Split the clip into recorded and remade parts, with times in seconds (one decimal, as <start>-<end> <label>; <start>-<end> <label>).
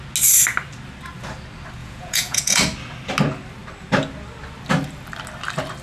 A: 0.0-1.8 recorded; 1.8-2.6 remade; 2.6-5.8 recorded